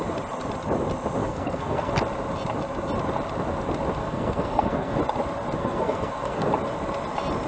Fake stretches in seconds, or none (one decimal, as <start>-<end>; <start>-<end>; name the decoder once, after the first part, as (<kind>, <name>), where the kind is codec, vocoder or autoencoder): 1.2-1.9 (codec, SNAC); 4.0-5.0; 5.6-6.5